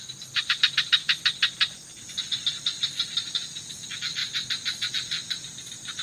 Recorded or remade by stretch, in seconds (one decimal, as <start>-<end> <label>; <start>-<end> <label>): 0.0-4.2 remade; 4.2-4.9 recorded; 4.9-6.0 remade